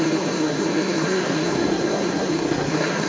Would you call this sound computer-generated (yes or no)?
yes